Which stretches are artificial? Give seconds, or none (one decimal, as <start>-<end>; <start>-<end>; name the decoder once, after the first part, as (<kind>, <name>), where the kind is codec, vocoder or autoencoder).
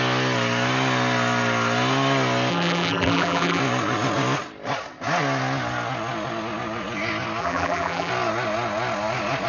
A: 2.5-3.6 (vocoder, BigVGAN v2); 7.4-8.1